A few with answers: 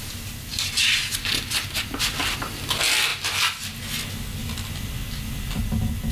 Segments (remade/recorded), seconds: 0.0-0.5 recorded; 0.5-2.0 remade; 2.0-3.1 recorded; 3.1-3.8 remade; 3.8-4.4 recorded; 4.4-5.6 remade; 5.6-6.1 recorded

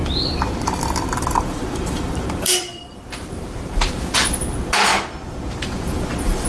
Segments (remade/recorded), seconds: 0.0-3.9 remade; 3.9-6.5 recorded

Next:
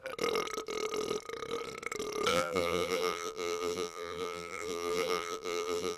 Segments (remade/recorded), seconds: 0.0-2.3 recorded; 2.3-6.0 remade